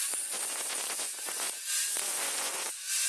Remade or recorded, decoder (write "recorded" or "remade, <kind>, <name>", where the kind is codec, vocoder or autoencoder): remade, vocoder, Vocos